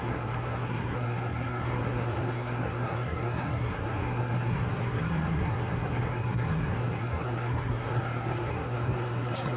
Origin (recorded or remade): remade